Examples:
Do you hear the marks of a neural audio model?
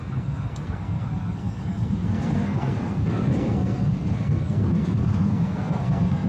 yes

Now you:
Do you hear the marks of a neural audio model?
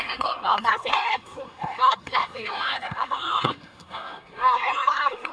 yes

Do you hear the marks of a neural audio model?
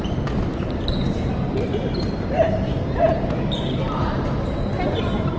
yes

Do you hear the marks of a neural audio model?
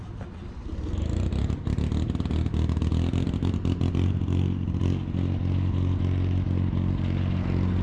no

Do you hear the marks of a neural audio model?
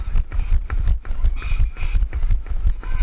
no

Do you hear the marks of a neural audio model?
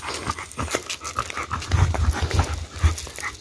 no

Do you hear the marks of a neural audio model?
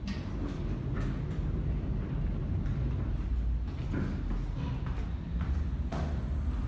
no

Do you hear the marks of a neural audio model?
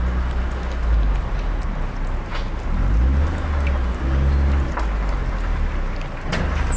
no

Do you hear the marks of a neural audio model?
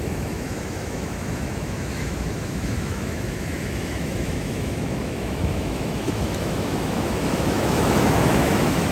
yes